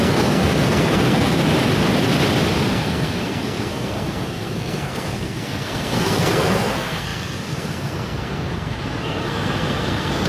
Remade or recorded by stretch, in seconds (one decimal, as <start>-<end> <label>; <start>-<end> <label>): 0.0-1.4 remade; 1.4-2.7 recorded; 2.7-10.3 remade